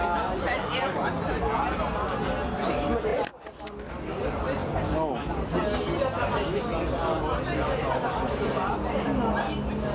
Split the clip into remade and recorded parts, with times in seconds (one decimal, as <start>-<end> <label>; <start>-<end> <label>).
0.0-9.9 recorded